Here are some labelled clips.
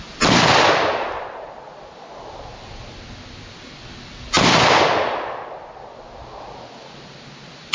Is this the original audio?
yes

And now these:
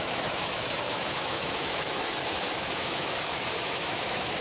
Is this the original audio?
no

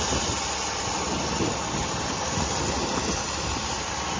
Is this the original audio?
yes